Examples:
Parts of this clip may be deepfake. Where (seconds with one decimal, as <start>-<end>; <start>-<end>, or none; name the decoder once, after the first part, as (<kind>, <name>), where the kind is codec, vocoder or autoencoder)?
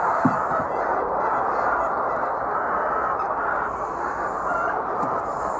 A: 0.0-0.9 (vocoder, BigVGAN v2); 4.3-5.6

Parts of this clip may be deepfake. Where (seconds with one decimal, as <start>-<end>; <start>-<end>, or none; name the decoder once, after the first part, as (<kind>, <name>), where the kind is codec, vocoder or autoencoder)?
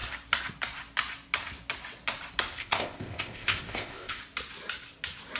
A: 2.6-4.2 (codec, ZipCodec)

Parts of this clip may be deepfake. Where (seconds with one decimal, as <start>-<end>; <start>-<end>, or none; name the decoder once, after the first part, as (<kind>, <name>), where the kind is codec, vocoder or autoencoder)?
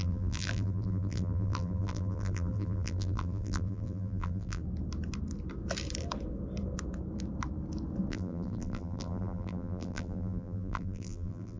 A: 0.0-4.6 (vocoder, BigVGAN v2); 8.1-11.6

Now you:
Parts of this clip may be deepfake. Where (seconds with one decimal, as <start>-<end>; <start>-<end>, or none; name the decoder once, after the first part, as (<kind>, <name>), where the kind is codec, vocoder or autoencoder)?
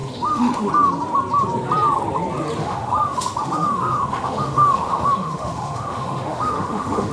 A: 0.0-0.7 (autoencoder, DAC-VAE); 2.6-7.1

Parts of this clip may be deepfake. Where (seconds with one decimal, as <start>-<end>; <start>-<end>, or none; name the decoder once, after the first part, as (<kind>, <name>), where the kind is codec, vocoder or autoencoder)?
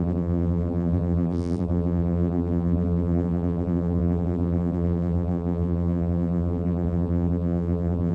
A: 0.0-8.1 (vocoder, BigVGAN v2)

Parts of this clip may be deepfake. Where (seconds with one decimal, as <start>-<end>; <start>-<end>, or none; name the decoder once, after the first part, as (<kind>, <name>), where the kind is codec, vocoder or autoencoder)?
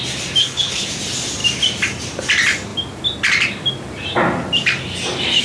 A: 0.4-0.9 (codec, HILCodec)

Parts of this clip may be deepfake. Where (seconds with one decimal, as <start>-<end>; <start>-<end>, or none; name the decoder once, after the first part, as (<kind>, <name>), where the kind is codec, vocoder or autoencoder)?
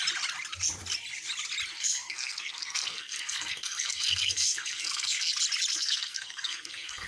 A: 1.7-5.3 (codec, SNAC); 5.7-7.1